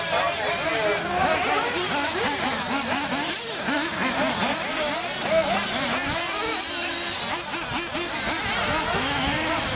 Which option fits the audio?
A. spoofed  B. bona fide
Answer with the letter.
B